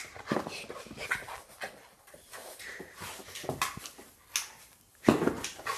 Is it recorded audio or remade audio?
recorded